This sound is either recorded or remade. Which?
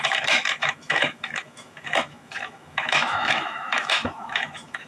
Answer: remade